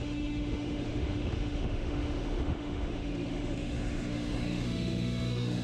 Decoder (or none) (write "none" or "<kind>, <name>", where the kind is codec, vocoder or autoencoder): autoencoder, DAC-VAE